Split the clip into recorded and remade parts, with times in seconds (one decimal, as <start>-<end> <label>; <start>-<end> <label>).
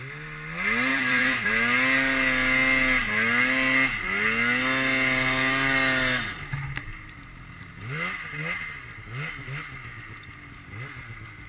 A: 0.0-0.9 recorded; 0.9-1.5 remade; 1.5-11.5 recorded